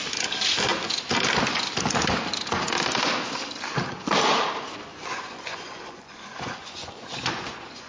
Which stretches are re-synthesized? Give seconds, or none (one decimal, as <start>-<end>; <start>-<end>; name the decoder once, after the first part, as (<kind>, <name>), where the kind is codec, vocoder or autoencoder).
4.9-7.9 (vocoder, Vocos)